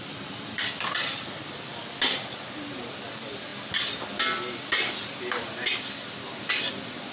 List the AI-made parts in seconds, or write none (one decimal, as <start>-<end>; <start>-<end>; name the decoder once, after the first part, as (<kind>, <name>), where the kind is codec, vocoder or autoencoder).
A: 0.0-1.7 (vocoder, BigVGAN v2)